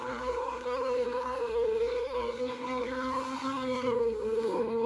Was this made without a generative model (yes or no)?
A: no